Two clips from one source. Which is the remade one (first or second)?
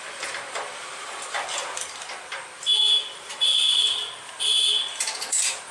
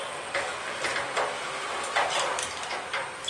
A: first